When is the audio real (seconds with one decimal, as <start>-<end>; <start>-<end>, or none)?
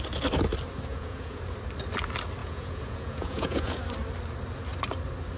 0.0-0.9; 1.4-2.4; 3.8-5.4